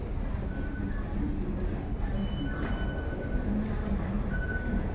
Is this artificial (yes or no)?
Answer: no